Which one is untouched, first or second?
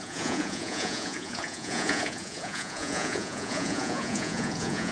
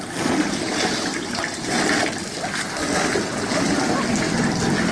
second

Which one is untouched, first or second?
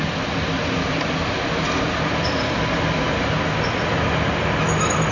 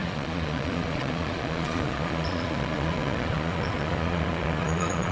first